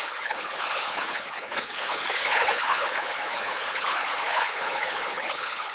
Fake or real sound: fake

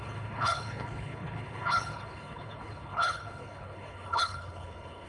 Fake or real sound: fake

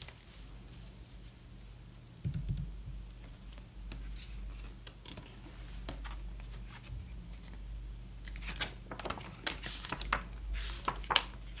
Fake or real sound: real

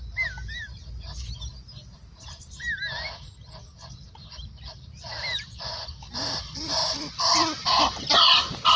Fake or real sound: real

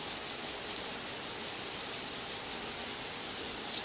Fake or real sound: real